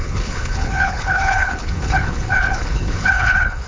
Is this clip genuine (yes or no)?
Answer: no